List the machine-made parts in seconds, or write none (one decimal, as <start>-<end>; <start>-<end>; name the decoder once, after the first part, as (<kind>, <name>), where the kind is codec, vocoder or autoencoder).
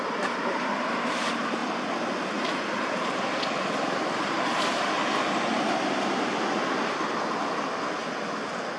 1.6-4.6 (vocoder, BigVGAN v2)